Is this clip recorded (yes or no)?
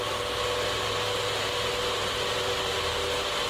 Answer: yes